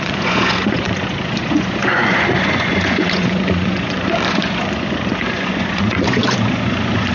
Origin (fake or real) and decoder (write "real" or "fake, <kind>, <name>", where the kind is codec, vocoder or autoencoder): fake, vocoder, Vocos